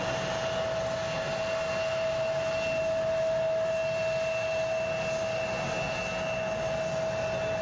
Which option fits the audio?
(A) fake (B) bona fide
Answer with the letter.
B